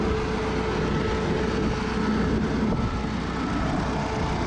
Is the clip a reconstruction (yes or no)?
no